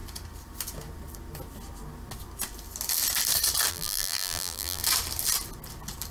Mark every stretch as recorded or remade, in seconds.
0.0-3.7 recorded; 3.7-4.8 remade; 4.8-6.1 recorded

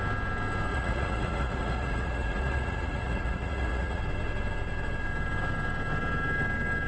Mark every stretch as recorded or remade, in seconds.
0.0-0.7 recorded; 0.7-4.0 remade; 4.0-6.9 recorded

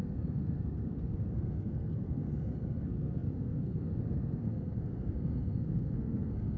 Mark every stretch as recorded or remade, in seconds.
0.0-6.6 remade

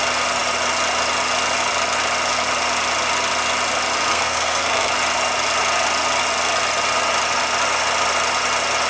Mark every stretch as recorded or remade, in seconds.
0.0-4.1 recorded; 4.1-4.9 remade; 4.9-8.9 recorded

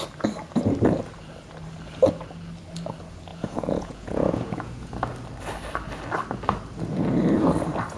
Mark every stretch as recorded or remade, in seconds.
0.0-3.3 recorded; 3.3-4.9 remade; 4.9-8.0 recorded

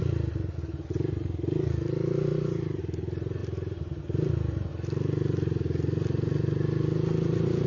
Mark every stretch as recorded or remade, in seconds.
0.0-2.3 recorded; 2.3-2.8 remade; 2.8-3.4 recorded; 3.4-4.0 remade; 4.0-7.7 recorded

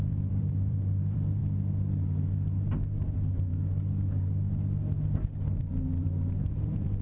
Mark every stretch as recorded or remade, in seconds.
0.0-1.4 remade; 1.4-5.6 recorded; 5.6-7.0 remade